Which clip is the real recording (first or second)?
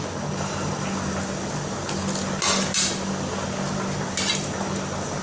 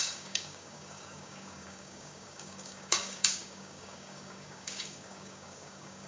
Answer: first